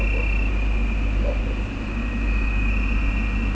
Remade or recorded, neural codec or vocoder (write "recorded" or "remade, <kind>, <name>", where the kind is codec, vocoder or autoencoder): recorded